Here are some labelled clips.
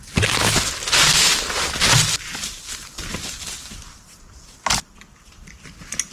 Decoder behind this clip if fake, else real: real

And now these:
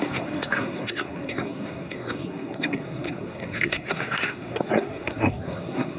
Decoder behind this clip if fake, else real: fake, codec, SNAC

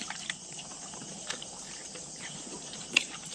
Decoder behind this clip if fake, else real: fake, vocoder, BigVGAN v2